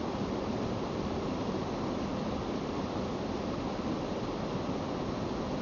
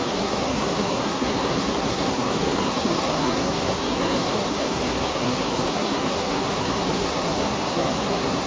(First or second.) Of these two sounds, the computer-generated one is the second